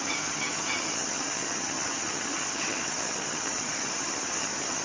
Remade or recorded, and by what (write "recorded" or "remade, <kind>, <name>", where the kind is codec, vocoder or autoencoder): remade, vocoder, HiFi-GAN